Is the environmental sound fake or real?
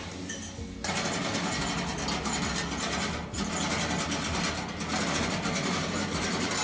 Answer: real